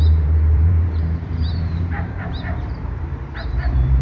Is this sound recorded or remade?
remade